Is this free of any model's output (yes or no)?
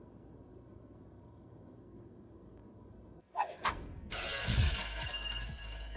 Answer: no